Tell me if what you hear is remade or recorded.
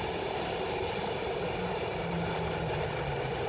recorded